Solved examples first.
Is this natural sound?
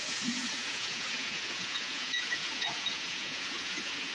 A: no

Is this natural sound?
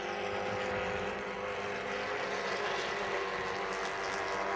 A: yes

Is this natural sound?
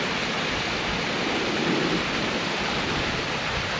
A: yes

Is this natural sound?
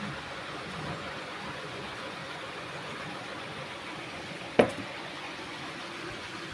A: no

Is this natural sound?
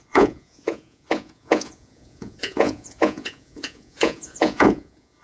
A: no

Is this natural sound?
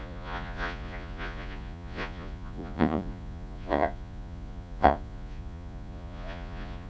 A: no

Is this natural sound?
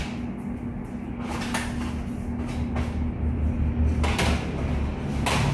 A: yes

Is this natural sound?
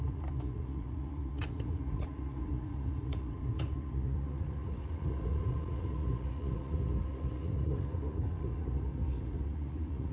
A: no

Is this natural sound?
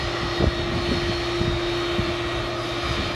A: yes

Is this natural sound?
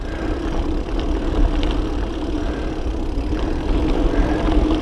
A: yes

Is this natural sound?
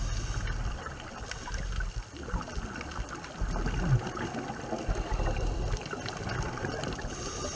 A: yes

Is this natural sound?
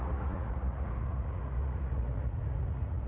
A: no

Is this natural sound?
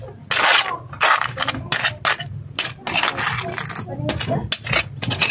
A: yes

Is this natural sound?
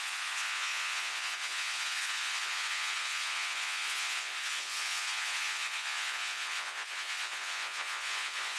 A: no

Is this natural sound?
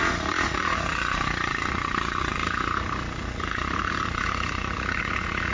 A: no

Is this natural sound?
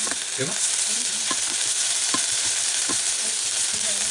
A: yes